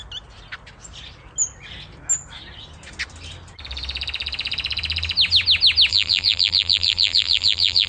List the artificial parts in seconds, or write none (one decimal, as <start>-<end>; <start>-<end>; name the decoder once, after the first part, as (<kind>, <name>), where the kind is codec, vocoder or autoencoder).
5.9-7.9 (vocoder, BigVGAN v2)